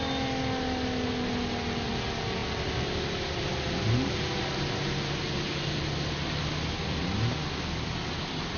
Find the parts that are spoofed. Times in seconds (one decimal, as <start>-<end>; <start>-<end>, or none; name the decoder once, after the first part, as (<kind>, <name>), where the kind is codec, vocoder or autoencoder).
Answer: none